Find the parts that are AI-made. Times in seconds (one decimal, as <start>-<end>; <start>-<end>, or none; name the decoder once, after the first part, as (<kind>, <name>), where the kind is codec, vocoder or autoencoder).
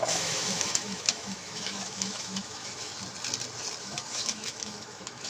0.0-2.9 (autoencoder, DAC-VAE); 3.8-5.3